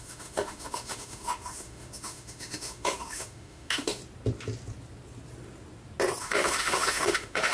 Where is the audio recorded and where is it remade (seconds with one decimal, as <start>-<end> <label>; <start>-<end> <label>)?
0.0-4.0 remade; 4.0-6.2 recorded; 6.2-7.5 remade